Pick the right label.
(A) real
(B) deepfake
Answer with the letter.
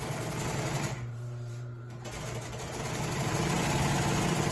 B